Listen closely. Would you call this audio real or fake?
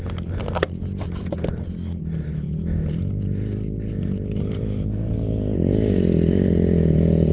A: real